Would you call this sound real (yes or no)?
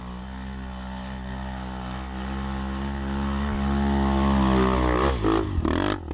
yes